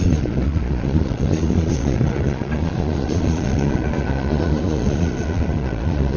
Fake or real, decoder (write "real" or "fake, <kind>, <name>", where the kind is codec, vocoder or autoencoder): fake, vocoder, Vocos